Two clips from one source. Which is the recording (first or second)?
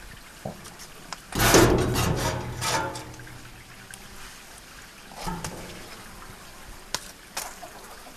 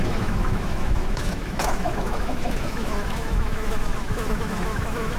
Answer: first